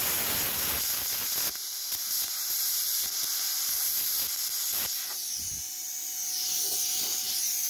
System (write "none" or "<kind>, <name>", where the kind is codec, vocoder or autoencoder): none